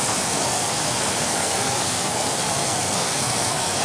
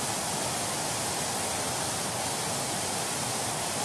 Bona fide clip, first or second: second